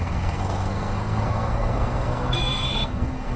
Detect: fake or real fake